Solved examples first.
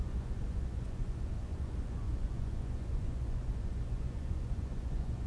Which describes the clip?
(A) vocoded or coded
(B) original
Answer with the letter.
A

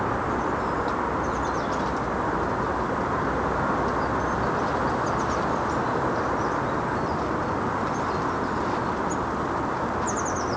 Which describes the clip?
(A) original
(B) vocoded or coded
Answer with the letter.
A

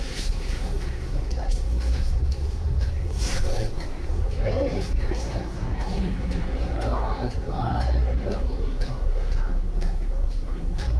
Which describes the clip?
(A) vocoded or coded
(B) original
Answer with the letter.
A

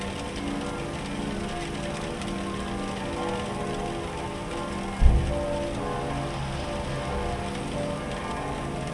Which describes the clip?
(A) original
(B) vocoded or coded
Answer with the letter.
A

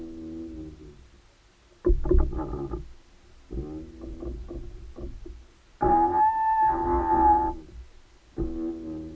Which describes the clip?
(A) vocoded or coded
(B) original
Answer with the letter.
B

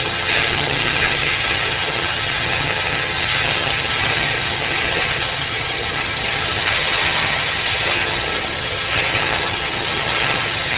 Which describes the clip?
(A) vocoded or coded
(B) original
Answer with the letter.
A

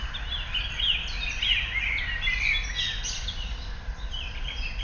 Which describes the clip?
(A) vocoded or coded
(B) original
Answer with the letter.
B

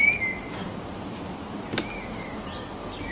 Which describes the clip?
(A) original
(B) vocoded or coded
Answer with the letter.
A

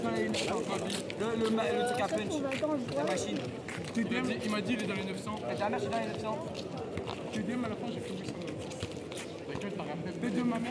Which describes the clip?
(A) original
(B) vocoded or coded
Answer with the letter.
A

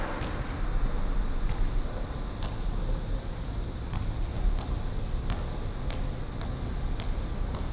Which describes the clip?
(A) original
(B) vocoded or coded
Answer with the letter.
A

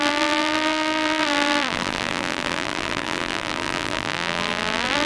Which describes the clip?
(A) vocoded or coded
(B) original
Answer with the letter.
A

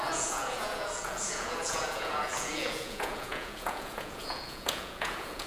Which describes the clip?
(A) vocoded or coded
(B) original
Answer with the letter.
A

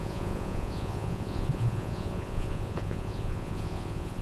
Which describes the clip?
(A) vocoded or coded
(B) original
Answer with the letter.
A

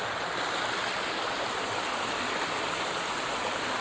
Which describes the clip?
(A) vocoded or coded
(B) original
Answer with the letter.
B